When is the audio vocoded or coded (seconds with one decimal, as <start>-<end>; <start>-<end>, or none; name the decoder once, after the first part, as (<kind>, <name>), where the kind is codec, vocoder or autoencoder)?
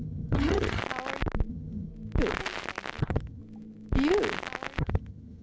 0.0-0.8 (vocoder, HiFi-GAN); 1.5-1.9; 3.0-3.4; 4.8-5.4